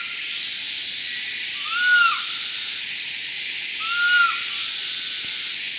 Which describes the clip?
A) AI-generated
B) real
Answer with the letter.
B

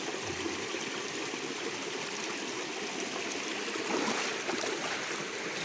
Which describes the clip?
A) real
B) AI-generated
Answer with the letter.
A